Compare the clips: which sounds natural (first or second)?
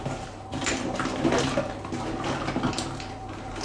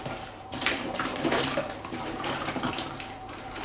first